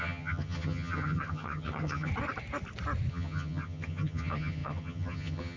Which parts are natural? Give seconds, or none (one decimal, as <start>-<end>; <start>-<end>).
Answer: 2.1-3.1